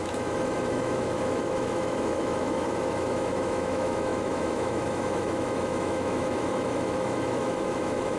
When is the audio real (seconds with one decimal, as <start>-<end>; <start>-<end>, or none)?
none